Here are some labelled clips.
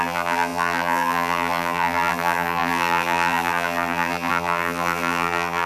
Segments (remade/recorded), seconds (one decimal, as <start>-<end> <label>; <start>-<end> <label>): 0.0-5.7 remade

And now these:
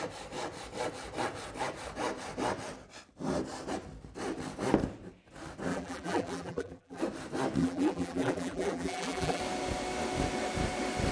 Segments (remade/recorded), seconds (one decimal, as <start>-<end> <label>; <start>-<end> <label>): 0.0-5.7 recorded; 5.7-7.0 remade; 7.0-7.6 recorded; 7.6-9.4 remade; 9.4-11.1 recorded

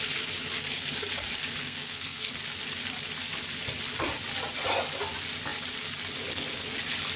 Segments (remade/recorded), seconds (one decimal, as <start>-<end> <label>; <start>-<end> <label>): 0.0-1.6 recorded; 1.6-2.3 remade; 2.3-7.2 recorded

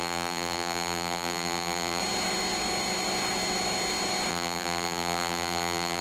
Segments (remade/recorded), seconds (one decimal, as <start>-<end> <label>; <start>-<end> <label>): 0.0-2.0 remade; 2.0-4.3 recorded; 4.3-6.0 remade

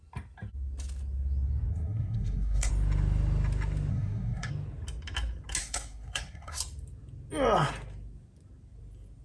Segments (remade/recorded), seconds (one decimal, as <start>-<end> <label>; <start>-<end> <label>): 0.0-1.7 recorded; 1.7-2.7 remade; 2.7-3.9 recorded; 3.9-4.5 remade; 4.5-5.6 recorded; 5.6-6.6 remade; 6.6-9.2 recorded